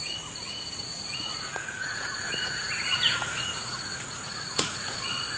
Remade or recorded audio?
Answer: remade